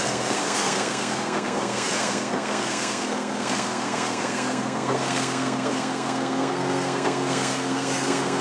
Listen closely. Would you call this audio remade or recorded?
remade